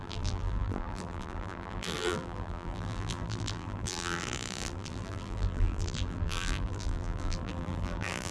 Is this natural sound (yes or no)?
no